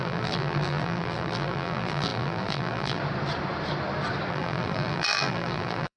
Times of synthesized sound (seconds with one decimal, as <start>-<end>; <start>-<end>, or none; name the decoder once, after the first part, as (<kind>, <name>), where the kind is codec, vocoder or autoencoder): 0.0-3.0 (vocoder, BigVGAN v2); 4.3-6.0